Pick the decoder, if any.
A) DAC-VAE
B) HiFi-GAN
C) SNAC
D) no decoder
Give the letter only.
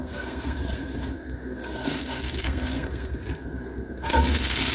C